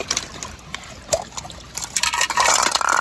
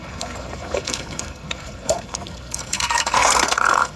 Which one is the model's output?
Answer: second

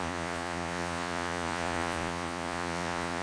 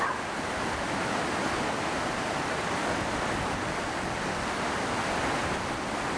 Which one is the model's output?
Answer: first